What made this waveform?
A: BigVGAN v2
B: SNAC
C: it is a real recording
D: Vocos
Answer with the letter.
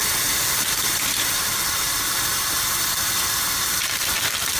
A